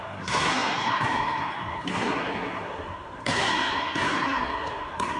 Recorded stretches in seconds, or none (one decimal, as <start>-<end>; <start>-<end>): none